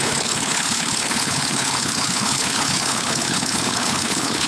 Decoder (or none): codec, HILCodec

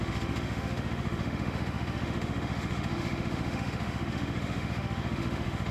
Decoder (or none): autoencoder, DAC-VAE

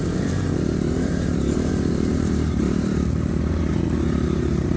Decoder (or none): vocoder, BigVGAN v2